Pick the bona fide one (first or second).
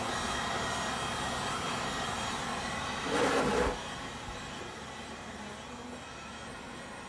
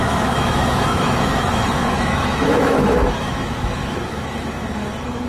first